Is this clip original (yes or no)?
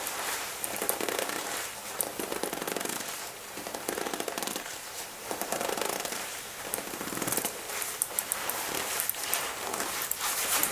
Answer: no